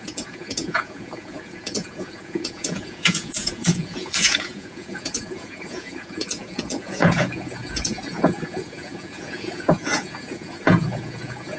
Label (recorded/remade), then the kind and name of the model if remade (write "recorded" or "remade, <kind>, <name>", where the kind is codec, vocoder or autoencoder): remade, vocoder, Vocos